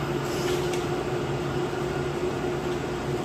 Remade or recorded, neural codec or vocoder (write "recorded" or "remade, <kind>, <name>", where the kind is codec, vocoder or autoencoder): recorded